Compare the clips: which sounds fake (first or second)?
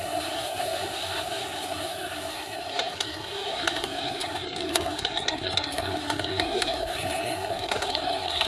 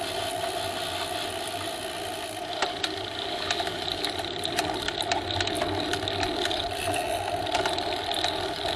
first